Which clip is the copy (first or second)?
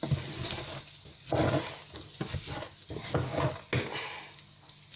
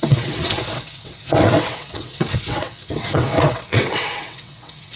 second